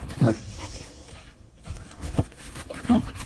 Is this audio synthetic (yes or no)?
yes